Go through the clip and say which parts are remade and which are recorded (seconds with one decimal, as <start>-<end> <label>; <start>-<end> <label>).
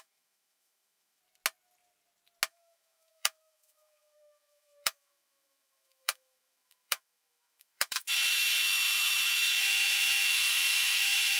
0.0-1.2 remade; 1.2-2.5 recorded; 2.5-11.4 remade